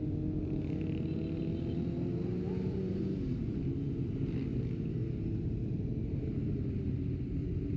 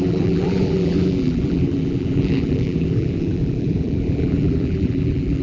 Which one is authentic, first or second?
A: first